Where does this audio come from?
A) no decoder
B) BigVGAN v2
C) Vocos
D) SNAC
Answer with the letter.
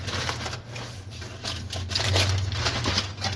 A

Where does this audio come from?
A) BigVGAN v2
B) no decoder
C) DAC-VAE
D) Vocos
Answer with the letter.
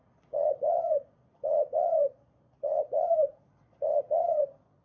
D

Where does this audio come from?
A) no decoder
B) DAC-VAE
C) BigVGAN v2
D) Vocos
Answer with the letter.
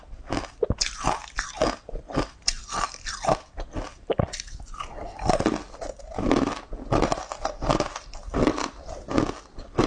A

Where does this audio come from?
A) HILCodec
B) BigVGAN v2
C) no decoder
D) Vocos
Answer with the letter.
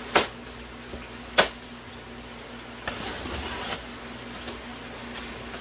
C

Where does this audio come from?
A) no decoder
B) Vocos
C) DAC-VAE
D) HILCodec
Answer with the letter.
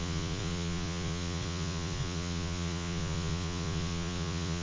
B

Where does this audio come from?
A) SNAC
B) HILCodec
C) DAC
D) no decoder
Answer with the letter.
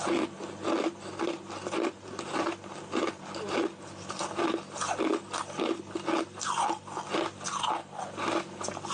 D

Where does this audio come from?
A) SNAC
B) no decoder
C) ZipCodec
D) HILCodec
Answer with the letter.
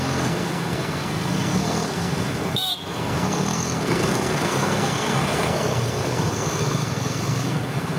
A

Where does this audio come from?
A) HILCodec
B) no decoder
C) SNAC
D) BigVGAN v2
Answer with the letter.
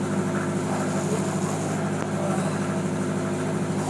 B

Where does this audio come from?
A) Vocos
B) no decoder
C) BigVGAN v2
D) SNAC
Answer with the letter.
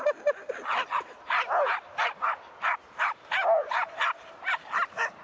B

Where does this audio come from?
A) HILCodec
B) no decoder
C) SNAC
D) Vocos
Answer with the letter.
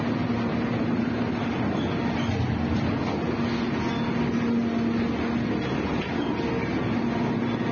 B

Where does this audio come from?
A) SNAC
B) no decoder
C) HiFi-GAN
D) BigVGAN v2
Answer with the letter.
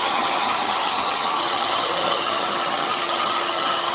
C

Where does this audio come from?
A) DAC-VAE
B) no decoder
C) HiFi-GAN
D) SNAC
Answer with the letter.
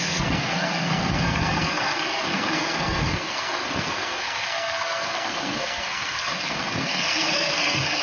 D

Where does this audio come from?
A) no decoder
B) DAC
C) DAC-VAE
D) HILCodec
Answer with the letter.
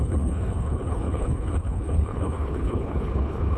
D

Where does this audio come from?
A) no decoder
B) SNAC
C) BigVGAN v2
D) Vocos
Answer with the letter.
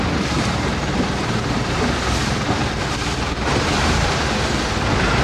C